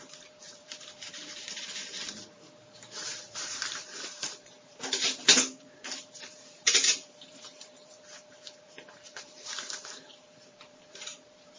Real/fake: fake